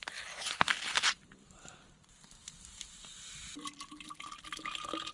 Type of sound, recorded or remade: recorded